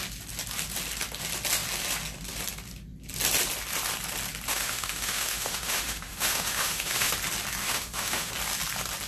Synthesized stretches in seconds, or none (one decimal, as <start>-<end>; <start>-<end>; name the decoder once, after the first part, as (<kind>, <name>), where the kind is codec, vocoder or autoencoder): 4.5-7.1 (autoencoder, DAC-VAE); 7.6-8.3